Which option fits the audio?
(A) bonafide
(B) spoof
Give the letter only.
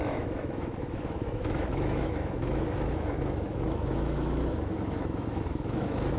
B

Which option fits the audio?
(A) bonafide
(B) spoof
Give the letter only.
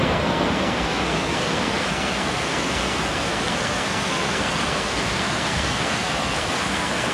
B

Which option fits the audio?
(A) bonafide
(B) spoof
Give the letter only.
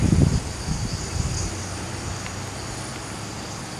A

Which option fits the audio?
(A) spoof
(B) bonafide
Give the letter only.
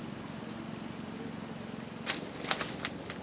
B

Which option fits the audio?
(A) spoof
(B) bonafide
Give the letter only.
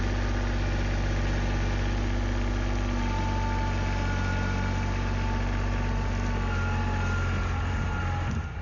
B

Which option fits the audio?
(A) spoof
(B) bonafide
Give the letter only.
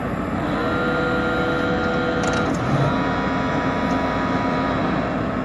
B